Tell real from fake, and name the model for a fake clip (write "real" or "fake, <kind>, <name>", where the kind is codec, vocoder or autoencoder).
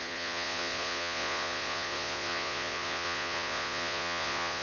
fake, vocoder, Vocos